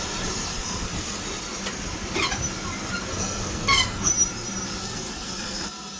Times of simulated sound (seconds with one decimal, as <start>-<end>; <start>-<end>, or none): 0.5-1.2; 3.1-4.1; 4.8-6.0